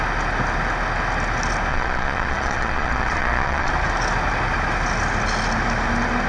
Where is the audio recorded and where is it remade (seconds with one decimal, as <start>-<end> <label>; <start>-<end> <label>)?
0.0-1.7 recorded; 1.7-3.7 remade; 3.7-6.3 recorded

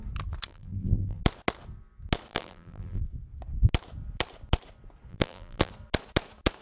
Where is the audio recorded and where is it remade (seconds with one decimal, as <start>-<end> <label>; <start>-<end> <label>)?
0.0-0.5 recorded; 0.5-1.2 remade; 1.2-2.3 recorded; 2.3-3.0 remade; 3.0-5.1 recorded; 5.1-5.7 remade; 5.7-6.6 recorded

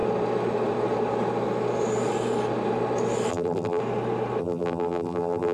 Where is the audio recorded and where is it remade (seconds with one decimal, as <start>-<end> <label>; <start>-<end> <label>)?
0.0-3.3 recorded; 3.3-3.8 remade; 3.8-4.4 recorded; 4.4-5.5 remade